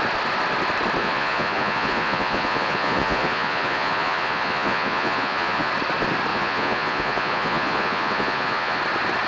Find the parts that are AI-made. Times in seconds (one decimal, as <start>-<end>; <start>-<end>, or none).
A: 1.0-5.7; 6.3-8.8